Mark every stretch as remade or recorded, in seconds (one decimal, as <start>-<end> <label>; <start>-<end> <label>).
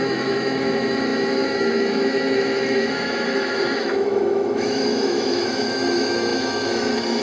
0.0-7.2 remade